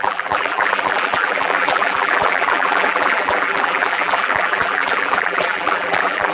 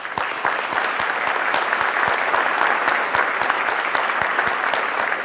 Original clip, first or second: second